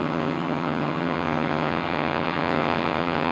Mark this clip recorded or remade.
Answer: remade